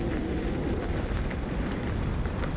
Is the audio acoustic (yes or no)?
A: yes